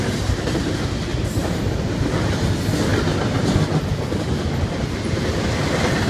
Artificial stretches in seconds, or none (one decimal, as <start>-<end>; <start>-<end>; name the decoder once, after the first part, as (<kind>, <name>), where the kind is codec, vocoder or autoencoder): 1.1-2.5 (vocoder, BigVGAN v2); 2.9-3.5